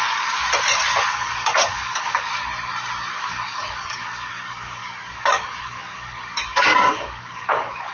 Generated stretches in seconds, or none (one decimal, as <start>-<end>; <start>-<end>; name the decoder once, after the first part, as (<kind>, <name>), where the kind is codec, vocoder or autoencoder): 0.0-0.4 (codec, DAC); 1.1-2.3; 3.1-7.9